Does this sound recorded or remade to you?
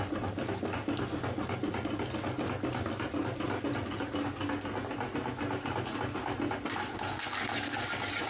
recorded